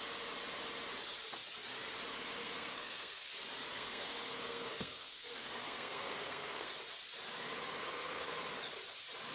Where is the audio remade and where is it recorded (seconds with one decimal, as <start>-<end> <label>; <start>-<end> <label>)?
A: 0.0-2.4 recorded; 2.4-3.3 remade; 3.3-3.7 recorded; 3.7-6.7 remade; 6.7-7.8 recorded; 7.8-8.4 remade; 8.4-9.3 recorded